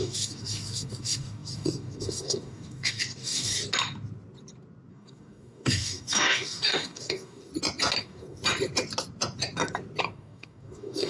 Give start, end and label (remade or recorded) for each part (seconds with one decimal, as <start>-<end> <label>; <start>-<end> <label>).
0.0-3.6 remade; 3.6-4.9 recorded; 4.9-7.5 remade; 7.5-8.0 recorded; 8.0-8.4 remade; 8.4-10.0 recorded; 10.0-11.1 remade